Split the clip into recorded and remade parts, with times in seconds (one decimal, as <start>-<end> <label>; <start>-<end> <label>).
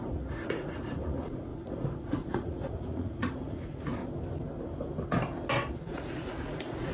0.0-4.0 remade; 4.0-5.7 recorded; 5.7-6.9 remade